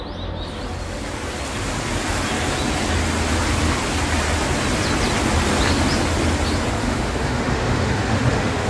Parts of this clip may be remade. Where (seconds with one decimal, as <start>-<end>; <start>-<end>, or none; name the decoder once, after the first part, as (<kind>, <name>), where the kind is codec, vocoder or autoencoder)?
6.8-8.7 (autoencoder, DAC-VAE)